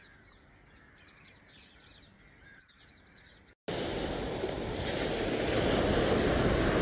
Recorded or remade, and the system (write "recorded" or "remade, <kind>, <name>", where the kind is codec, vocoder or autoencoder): recorded